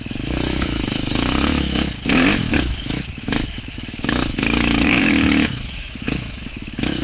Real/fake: fake